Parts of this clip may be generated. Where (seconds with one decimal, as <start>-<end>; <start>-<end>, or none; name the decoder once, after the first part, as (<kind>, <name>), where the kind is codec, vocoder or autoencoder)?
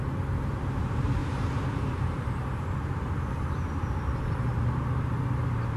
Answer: 0.0-5.8 (vocoder, BigVGAN v2)